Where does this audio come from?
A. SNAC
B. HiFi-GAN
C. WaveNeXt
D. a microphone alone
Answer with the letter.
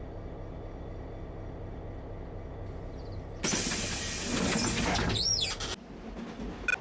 D